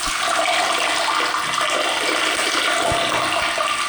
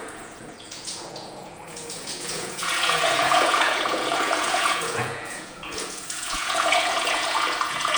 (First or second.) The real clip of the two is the first